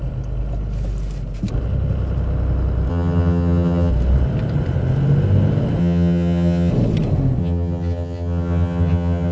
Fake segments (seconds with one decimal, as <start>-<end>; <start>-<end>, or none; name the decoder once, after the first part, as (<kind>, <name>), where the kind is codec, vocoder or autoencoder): 2.9-3.9 (vocoder, HiFi-GAN); 5.8-6.7; 7.4-9.3

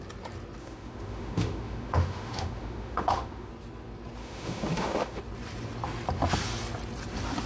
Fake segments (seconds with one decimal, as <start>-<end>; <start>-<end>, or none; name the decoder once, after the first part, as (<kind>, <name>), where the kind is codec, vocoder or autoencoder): 0.6-3.5 (autoencoder, DAC-VAE); 4.2-5.2

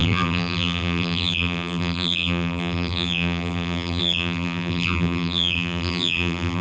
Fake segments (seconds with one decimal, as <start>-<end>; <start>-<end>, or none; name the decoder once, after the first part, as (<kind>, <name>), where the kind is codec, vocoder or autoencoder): 0.0-6.6 (vocoder, BigVGAN v2)

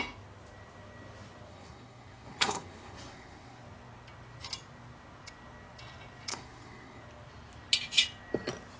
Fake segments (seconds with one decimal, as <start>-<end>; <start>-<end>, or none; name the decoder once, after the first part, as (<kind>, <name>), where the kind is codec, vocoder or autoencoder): 1.5-3.6 (codec, SNAC); 6.3-7.0

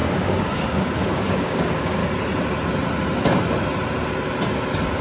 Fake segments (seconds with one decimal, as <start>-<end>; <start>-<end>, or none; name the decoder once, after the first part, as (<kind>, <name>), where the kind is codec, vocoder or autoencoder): 0.0-2.0 (codec, DAC)

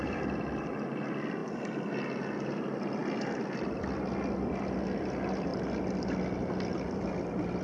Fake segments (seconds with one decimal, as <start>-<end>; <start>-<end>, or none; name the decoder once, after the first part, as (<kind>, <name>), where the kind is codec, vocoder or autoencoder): 1.4-1.9 (vocoder, BigVGAN v2); 5.5-7.1

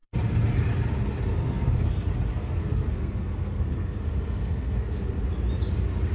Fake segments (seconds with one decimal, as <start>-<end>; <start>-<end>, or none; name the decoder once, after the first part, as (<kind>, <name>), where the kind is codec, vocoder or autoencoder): 1.3-1.9 (codec, SNAC); 2.3-5.2

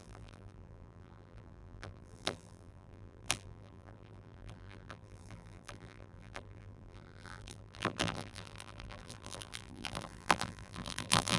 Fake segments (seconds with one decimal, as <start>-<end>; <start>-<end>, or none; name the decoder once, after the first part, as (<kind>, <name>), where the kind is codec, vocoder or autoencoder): 0.0-11.4 (vocoder, BigVGAN v2)